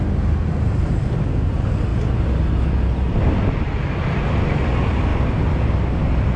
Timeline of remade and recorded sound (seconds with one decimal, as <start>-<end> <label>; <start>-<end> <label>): 0.0-6.4 recorded